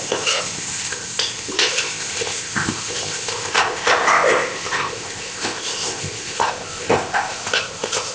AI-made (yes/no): yes